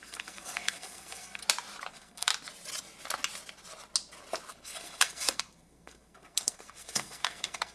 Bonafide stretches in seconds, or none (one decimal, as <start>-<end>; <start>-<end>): 1.4-1.9; 2.3-4.5